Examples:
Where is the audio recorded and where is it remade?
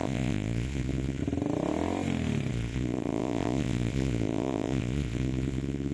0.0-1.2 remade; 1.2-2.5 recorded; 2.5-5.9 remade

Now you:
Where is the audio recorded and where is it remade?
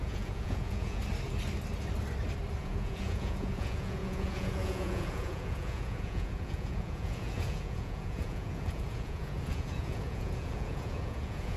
0.0-1.0 remade; 1.0-2.6 recorded; 2.6-11.6 remade